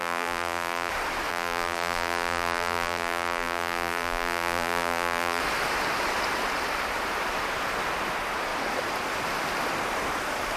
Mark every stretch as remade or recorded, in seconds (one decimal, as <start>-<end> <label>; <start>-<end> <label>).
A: 0.0-0.9 remade; 0.9-1.3 recorded; 1.3-5.4 remade; 5.4-10.6 recorded